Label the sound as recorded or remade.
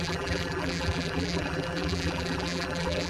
remade